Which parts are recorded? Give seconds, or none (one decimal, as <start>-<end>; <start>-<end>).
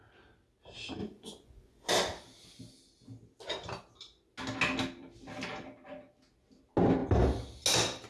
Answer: 0.0-1.0; 1.9-8.1